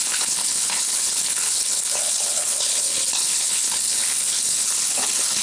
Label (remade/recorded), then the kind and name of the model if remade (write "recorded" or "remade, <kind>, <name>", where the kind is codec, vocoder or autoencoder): remade, codec, HILCodec